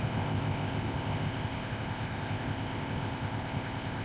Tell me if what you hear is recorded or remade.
remade